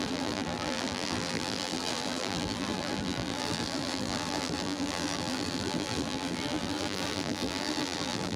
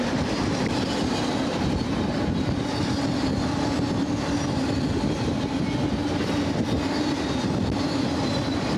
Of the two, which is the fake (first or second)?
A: first